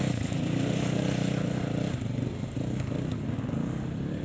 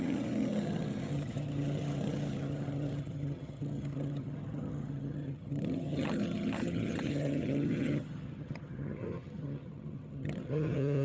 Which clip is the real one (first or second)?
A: first